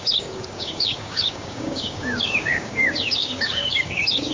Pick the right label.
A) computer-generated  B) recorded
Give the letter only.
A